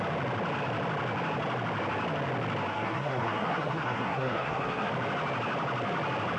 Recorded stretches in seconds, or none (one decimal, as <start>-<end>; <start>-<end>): 0.0-2.7; 4.9-6.4

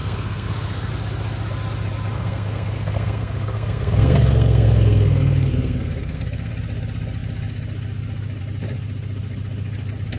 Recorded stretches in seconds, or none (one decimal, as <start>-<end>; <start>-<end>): 0.9-2.1; 6.5-10.2

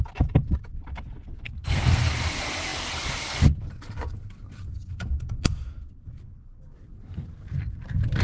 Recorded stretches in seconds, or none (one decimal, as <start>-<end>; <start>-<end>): 0.0-1.3; 2.1-8.2

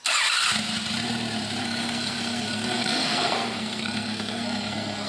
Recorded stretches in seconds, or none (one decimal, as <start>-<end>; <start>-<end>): 0.0-1.6